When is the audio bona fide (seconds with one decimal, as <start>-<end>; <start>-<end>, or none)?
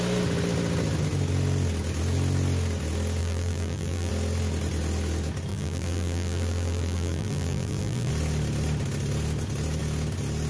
0.0-3.2; 4.1-5.5; 8.1-10.5